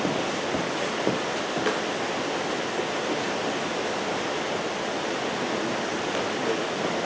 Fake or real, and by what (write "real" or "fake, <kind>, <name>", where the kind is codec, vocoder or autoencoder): real